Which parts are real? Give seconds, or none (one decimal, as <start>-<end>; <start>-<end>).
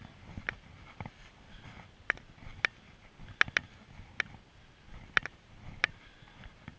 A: 0.0-6.8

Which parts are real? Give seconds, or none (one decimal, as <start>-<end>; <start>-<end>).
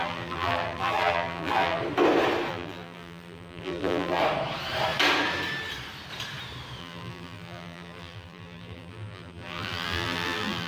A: 1.8-2.5; 4.2-6.8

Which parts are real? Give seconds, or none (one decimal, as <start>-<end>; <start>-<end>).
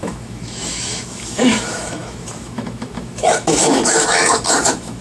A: none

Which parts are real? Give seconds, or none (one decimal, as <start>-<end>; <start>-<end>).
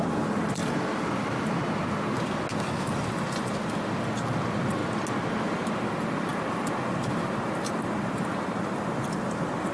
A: 0.6-3.0; 4.8-5.4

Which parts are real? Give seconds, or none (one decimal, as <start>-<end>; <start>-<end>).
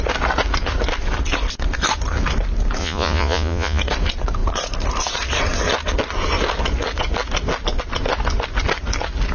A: 0.0-2.8; 3.8-9.3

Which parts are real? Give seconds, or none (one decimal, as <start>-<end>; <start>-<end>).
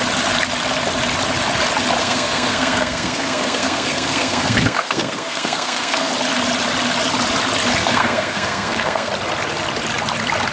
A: 0.0-2.0; 6.1-7.8; 9.1-10.5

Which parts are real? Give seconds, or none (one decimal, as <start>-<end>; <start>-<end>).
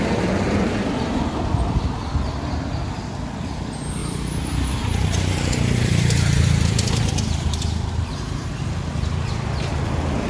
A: 0.0-4.0; 8.5-10.3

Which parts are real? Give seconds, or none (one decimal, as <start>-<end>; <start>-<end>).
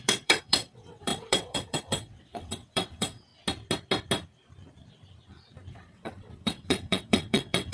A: 3.3-5.7